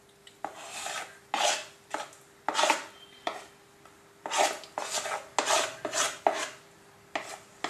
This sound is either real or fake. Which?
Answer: real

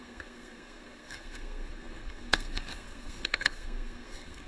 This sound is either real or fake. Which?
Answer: fake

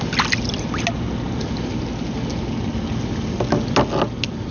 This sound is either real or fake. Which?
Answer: real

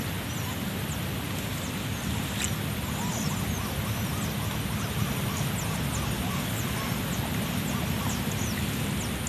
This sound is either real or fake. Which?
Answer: real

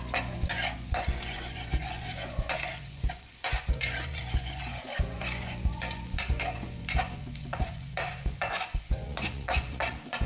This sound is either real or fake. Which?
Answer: fake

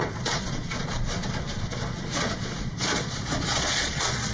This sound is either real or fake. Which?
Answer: fake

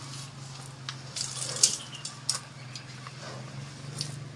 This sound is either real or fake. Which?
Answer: real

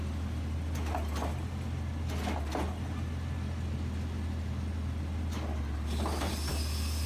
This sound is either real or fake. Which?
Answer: real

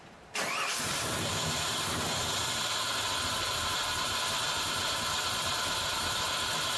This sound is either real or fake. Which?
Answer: real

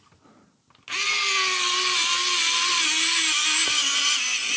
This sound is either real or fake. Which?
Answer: real